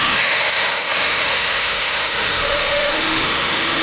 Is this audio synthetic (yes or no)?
yes